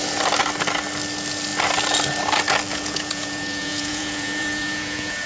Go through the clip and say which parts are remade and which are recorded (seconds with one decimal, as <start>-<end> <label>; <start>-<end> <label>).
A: 0.0-2.7 recorded; 2.7-5.3 remade